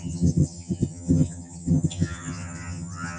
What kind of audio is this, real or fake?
fake